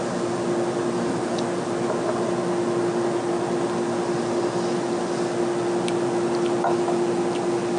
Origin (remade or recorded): recorded